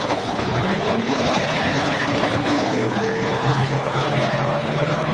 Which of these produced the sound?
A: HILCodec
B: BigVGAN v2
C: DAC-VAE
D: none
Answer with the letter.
A